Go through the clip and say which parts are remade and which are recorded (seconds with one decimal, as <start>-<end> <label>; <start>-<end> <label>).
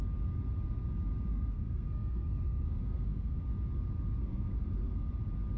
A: 0.0-1.3 recorded; 1.3-3.4 remade; 3.4-4.2 recorded; 4.2-5.1 remade; 5.1-5.6 recorded